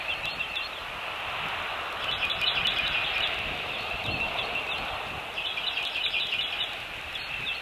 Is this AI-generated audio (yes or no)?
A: no